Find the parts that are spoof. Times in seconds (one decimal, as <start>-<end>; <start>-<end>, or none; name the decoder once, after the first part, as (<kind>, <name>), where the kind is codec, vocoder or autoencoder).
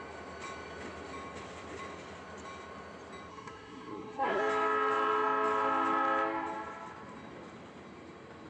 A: 3.3-4.4 (codec, SNAC)